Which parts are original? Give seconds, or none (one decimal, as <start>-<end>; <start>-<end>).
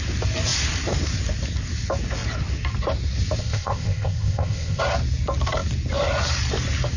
0.0-3.4; 4.8-7.0